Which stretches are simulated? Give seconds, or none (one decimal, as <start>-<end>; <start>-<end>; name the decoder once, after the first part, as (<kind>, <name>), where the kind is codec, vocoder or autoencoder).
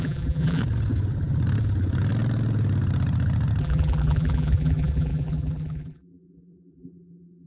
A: 0.0-0.6 (vocoder, BigVGAN v2); 3.6-7.5